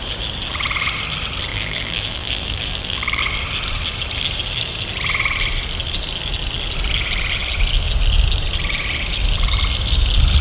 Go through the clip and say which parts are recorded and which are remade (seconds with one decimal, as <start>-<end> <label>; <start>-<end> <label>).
0.0-1.5 recorded; 1.5-3.2 remade; 3.2-10.4 recorded